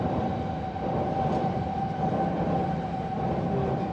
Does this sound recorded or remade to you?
recorded